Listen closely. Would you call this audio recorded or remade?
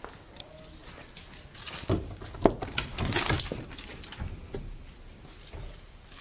recorded